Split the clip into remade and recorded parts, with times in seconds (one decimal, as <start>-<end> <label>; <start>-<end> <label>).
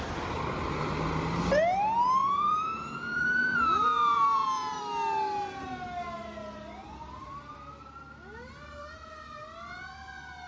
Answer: 0.0-2.2 recorded; 2.2-4.8 remade; 4.8-10.5 recorded